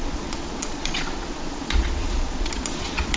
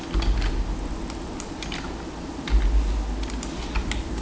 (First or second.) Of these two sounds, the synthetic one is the first